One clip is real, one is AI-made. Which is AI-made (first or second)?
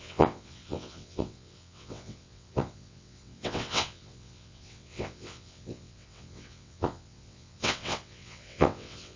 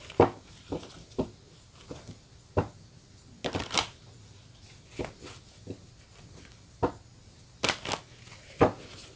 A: first